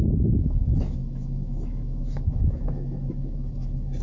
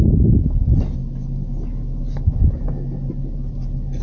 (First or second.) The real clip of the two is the second